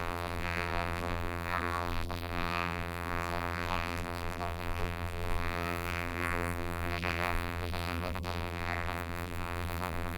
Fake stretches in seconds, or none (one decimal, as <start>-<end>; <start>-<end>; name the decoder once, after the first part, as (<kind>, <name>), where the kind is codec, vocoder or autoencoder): 0.0-10.2 (vocoder, BigVGAN v2)